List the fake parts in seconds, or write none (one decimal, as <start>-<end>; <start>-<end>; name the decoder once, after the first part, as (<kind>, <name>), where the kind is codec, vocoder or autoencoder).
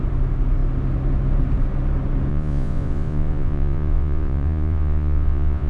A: 2.3-5.7 (vocoder, Vocos)